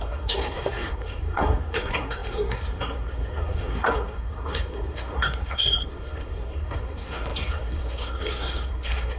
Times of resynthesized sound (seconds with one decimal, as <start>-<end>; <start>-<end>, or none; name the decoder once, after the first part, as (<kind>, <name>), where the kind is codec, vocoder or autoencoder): 0.0-9.2 (codec, SNAC)